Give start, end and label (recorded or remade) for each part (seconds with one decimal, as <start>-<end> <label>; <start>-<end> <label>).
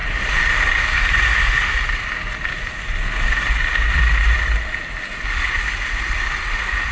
0.0-6.9 recorded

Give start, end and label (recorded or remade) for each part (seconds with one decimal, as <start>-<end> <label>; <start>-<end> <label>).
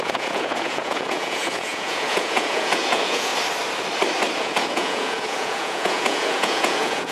0.0-3.3 remade; 3.3-4.4 recorded; 4.4-7.1 remade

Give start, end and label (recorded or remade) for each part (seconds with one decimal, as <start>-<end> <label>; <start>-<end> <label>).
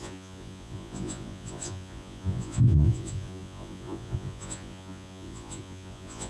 0.0-6.3 remade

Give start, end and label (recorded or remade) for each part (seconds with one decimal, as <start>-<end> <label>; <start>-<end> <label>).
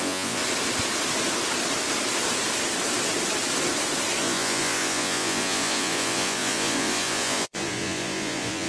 0.0-0.4 remade; 0.4-4.2 recorded; 4.2-8.7 remade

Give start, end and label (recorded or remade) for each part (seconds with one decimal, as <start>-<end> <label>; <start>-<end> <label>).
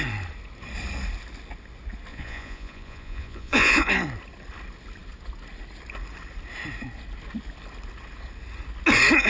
0.0-2.1 recorded; 2.1-3.9 remade; 3.9-9.3 recorded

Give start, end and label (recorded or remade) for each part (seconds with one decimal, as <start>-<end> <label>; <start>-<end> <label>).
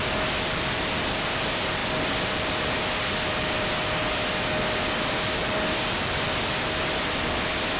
0.0-7.8 recorded